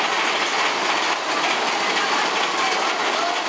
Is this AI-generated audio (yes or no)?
no